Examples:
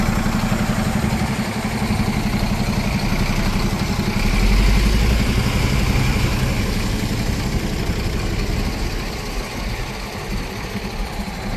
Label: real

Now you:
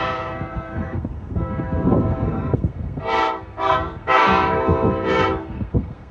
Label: fake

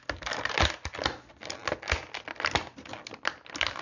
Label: real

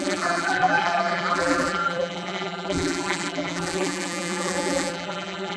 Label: fake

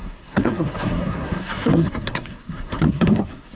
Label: fake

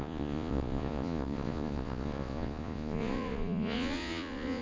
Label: fake